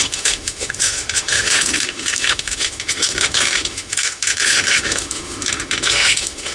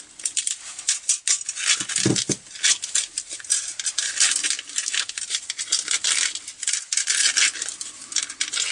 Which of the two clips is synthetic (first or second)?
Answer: first